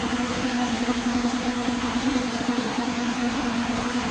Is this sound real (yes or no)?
no